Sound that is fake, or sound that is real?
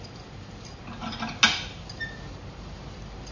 real